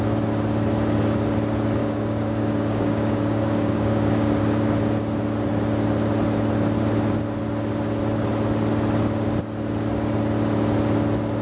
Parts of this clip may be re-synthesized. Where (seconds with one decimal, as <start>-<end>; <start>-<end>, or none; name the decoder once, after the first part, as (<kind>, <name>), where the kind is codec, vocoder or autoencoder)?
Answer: 1.8-4.4 (codec, DAC)